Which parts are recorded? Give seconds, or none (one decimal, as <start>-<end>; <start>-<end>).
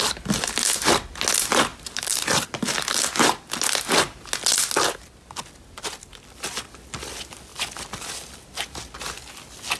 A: 0.0-1.7; 3.0-7.5; 8.1-9.8